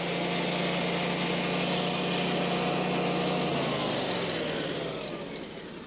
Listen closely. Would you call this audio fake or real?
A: real